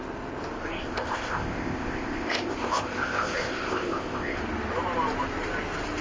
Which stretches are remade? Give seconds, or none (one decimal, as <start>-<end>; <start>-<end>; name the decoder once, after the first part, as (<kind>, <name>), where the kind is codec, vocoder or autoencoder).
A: 0.8-4.4 (codec, ZipCodec)